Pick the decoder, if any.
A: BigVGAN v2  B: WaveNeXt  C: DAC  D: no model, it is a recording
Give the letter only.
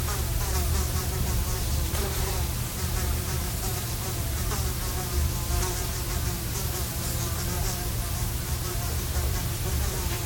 A